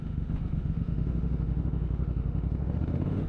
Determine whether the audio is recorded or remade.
remade